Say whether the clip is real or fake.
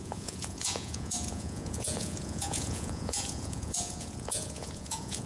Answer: fake